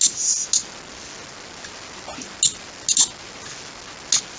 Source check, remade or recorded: recorded